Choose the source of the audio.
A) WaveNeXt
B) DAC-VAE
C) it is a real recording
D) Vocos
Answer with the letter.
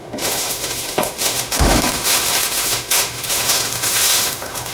B